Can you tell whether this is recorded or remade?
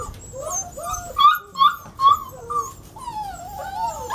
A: recorded